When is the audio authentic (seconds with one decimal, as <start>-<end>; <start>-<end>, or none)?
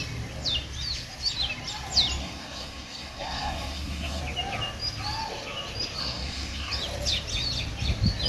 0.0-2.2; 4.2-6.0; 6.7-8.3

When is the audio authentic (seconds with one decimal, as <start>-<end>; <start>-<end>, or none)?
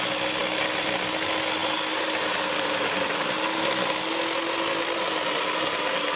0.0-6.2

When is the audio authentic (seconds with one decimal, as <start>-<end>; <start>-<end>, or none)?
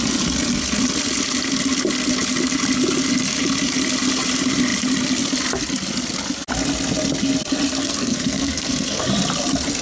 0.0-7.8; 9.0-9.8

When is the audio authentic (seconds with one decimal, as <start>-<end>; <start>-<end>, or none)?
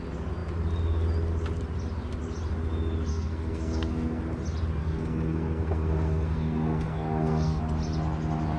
0.0-3.1; 4.2-4.8; 7.6-8.6